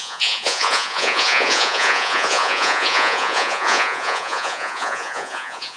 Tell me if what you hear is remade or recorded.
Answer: remade